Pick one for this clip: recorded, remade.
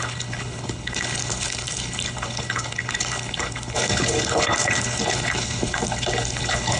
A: remade